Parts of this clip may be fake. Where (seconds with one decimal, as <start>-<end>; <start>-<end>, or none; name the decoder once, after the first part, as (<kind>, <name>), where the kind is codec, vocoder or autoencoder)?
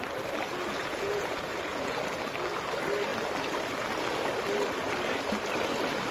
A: 0.8-2.0 (vocoder, Vocos)